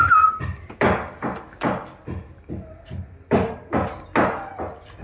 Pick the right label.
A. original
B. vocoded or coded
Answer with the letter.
A